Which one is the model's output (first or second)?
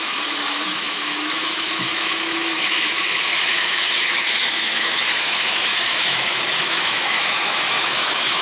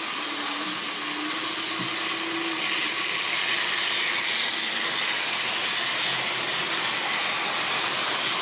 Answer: first